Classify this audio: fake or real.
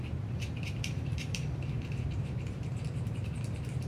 fake